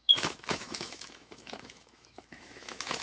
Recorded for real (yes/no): no